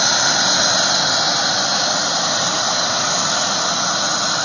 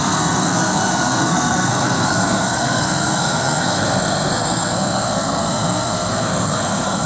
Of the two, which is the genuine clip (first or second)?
first